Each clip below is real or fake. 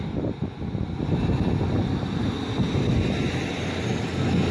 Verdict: real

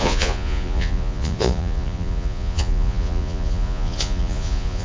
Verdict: fake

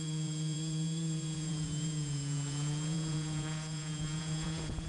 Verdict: fake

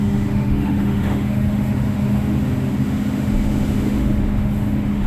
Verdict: fake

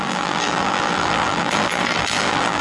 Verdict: fake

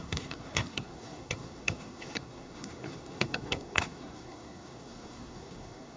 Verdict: fake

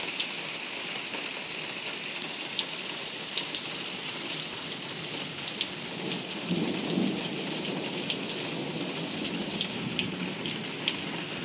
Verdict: real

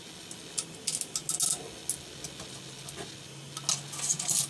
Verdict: real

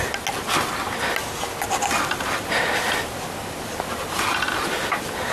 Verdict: real